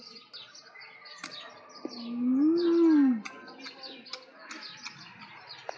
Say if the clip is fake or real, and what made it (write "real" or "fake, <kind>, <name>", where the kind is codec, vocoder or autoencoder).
real